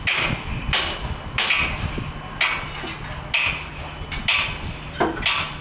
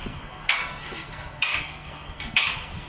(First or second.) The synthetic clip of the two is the second